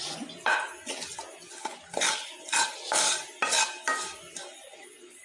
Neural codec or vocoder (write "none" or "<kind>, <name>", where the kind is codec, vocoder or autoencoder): none